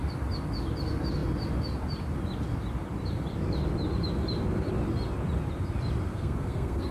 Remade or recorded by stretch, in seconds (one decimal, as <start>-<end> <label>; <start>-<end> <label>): 0.0-6.1 recorded; 6.1-6.9 remade